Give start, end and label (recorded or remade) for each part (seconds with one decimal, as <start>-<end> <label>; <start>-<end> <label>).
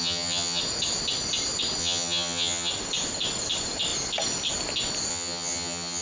0.0-0.6 remade; 0.6-1.8 recorded; 1.8-2.7 remade; 2.7-5.1 recorded; 5.1-6.0 remade